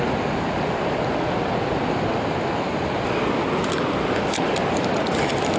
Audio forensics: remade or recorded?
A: recorded